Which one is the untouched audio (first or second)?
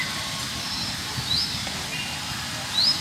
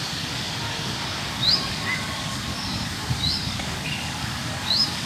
first